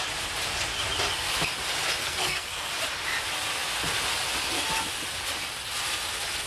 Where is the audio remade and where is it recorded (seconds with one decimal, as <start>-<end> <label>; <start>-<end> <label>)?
0.0-2.0 recorded; 2.0-2.7 remade; 2.7-6.5 recorded